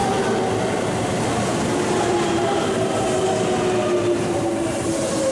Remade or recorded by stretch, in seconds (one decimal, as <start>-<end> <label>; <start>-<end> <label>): 0.0-1.1 recorded; 1.1-5.3 remade